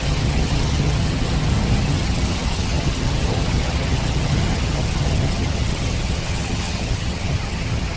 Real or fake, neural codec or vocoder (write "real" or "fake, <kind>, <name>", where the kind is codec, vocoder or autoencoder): fake, vocoder, HiFi-GAN